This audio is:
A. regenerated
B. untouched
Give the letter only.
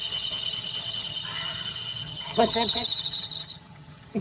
A